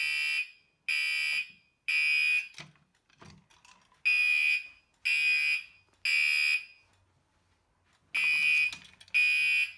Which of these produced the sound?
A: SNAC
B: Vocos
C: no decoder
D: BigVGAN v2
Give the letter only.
C